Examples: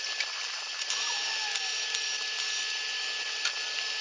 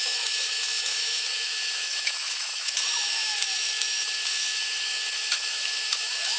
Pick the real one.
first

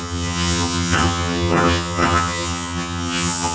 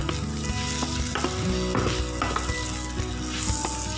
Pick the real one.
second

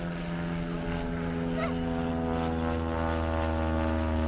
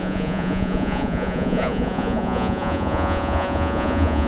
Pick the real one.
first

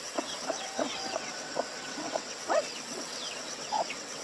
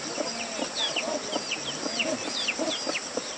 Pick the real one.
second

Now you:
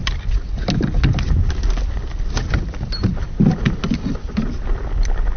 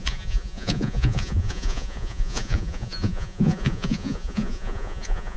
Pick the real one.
first